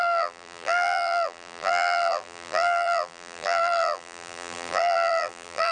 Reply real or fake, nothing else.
fake